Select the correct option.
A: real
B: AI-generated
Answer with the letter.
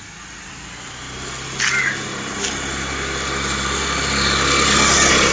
A